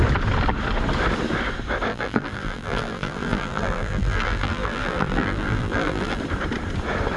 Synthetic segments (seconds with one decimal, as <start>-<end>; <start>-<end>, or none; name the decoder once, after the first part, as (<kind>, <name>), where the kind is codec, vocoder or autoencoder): 1.9-6.2 (vocoder, BigVGAN v2)